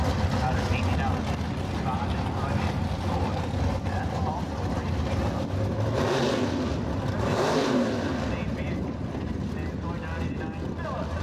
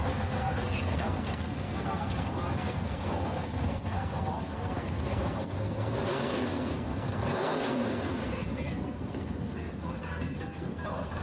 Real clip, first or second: first